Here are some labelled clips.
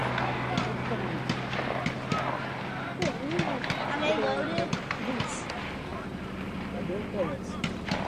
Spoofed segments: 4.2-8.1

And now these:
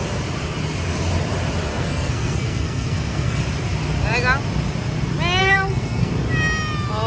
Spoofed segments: 1.7-3.4; 5.4-6.1

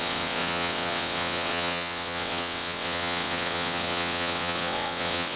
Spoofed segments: 0.0-5.4

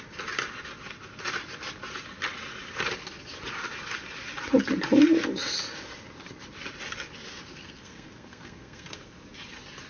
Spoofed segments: 7.5-9.1

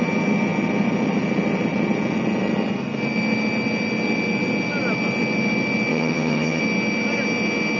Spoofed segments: 5.9-6.6